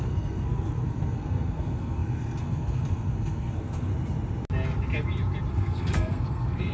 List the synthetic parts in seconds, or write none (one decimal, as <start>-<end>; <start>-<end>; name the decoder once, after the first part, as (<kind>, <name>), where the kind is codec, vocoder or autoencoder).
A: 0.0-3.9 (codec, SNAC); 5.5-6.7